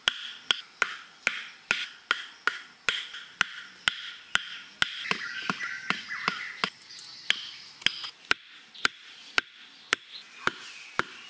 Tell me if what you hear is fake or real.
real